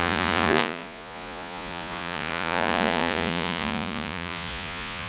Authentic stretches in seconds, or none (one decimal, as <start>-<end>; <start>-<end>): none